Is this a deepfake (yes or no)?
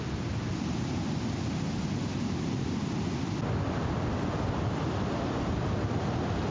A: no